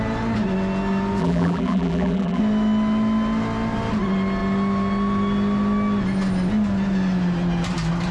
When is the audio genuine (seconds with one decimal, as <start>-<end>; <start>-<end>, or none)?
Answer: 0.0-1.2; 2.4-8.1